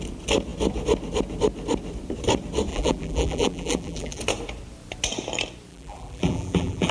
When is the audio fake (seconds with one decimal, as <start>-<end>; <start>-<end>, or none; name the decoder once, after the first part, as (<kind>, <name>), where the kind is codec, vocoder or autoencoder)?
2.7-4.2 (vocoder, BigVGAN v2); 5.7-6.9